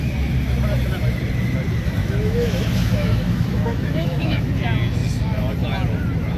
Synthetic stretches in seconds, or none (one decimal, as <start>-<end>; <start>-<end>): 2.0-4.5